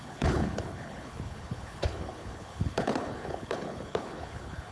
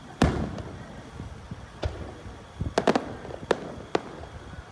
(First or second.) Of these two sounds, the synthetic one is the first